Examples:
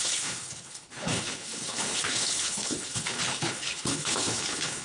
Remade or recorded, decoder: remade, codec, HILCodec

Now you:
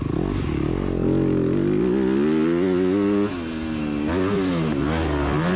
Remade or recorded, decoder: recorded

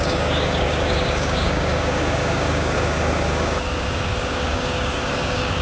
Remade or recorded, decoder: remade, codec, DAC